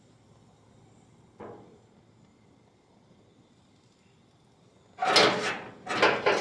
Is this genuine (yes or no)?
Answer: yes